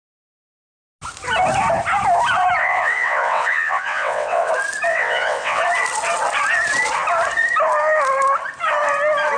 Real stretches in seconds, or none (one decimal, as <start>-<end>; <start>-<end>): 0.0-2.6; 4.5-4.9; 5.6-9.4